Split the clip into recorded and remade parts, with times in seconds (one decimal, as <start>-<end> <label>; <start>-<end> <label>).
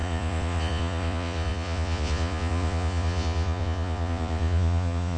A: 0.0-5.2 remade